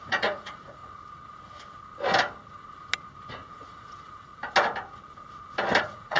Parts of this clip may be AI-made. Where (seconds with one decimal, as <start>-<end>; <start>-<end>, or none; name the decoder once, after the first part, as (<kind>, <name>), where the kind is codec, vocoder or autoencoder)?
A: 0.0-0.8 (vocoder, Vocos); 3.3-4.3; 5.8-6.2